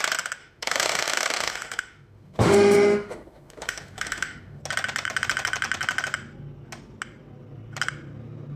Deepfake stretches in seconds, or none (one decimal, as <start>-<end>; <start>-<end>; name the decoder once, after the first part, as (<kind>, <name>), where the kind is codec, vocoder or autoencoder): 0.4-4.6 (autoencoder, DAC-VAE)